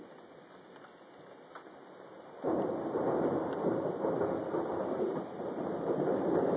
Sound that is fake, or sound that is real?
real